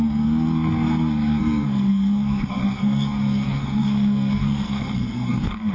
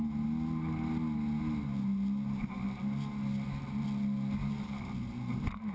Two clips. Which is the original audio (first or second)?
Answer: second